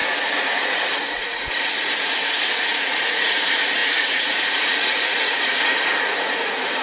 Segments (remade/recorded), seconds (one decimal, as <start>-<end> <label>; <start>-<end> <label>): 0.0-6.8 remade

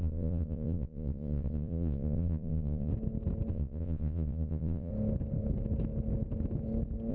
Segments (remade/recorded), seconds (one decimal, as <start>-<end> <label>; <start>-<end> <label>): 0.0-2.9 remade; 2.9-3.5 recorded; 3.5-4.9 remade; 4.9-7.1 recorded

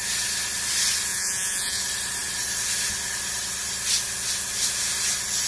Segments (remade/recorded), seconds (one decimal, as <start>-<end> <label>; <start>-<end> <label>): 0.0-1.1 recorded; 1.1-1.8 remade; 1.8-5.5 recorded